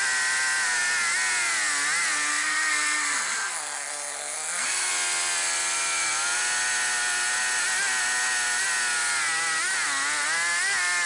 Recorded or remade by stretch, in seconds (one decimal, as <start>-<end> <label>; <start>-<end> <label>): 0.0-2.3 recorded; 2.3-4.9 remade; 4.9-11.1 recorded